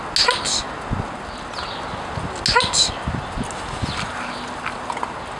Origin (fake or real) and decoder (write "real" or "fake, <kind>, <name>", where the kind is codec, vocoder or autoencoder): real